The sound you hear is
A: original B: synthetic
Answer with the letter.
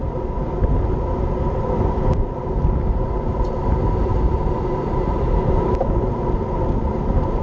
A